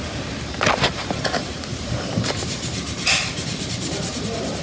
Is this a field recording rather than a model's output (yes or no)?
no